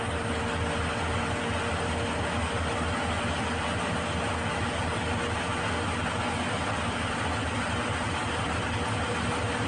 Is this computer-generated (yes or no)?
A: no